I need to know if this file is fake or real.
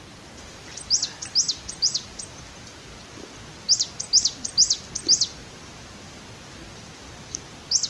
real